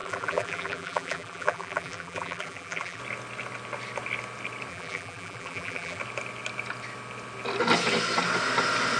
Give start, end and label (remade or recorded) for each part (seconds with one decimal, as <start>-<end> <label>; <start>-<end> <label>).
0.0-3.0 remade; 3.0-4.7 recorded; 4.7-6.0 remade; 6.0-9.0 recorded